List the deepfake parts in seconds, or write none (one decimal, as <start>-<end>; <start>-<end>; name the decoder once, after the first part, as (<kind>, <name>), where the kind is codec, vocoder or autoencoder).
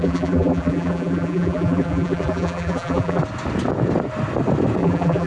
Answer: 0.0-3.2 (vocoder, BigVGAN v2); 4.8-5.3